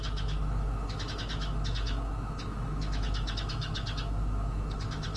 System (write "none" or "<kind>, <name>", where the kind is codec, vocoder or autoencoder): autoencoder, DAC-VAE